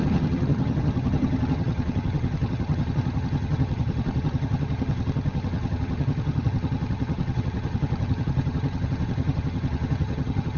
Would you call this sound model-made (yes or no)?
yes